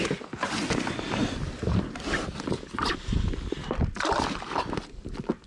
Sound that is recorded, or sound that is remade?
recorded